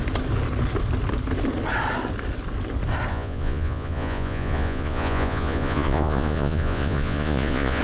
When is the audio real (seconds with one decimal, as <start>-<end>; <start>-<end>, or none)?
0.0-3.1